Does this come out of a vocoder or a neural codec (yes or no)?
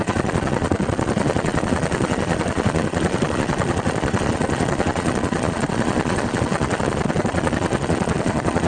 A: yes